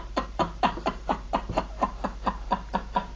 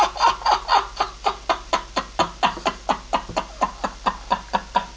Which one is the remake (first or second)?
first